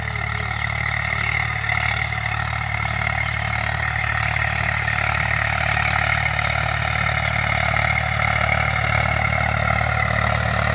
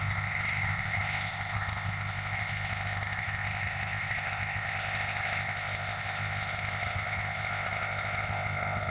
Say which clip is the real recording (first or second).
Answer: first